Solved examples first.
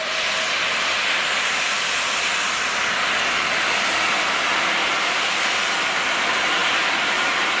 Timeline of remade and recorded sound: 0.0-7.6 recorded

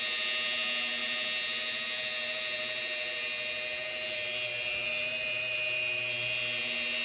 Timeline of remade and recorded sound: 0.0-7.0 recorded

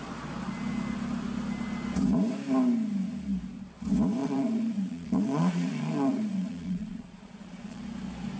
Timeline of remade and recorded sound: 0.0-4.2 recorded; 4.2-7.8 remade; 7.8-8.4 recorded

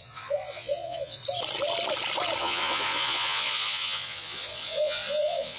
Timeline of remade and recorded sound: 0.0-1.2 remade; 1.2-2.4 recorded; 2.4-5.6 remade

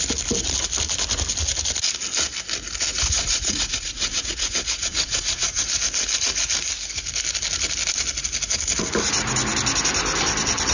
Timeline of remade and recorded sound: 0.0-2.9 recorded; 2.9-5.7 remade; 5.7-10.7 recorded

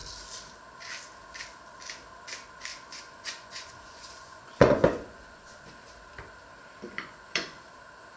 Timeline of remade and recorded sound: 0.0-2.7 recorded; 2.7-5.7 remade; 5.7-6.9 recorded; 6.9-7.7 remade; 7.7-8.2 recorded

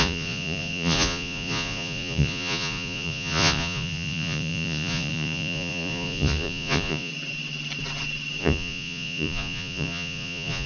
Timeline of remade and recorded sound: 0.0-7.1 remade; 7.1-8.4 recorded; 8.4-10.7 remade

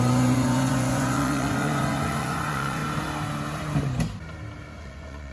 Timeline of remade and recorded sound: 0.0-2.8 remade; 2.8-4.8 recorded; 4.8-5.3 remade